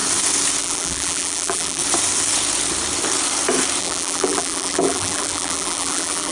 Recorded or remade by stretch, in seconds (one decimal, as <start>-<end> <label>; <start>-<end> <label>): 0.0-0.6 recorded; 0.6-1.8 remade; 1.8-3.8 recorded; 3.8-6.3 remade